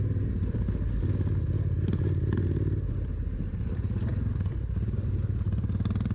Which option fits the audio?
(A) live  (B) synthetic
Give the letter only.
A